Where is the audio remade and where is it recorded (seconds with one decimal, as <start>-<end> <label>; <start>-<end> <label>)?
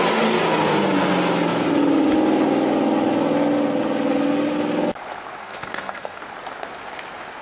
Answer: 0.0-5.4 recorded; 5.4-6.2 remade; 6.2-7.4 recorded